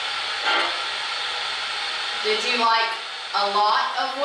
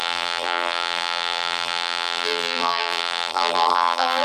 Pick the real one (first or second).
first